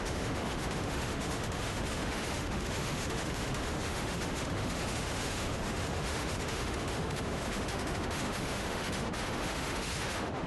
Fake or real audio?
fake